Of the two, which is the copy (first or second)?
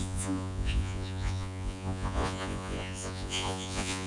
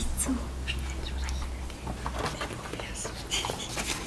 first